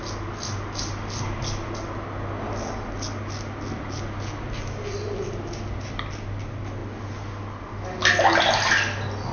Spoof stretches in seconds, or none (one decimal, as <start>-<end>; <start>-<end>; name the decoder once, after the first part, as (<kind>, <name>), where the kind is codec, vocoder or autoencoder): none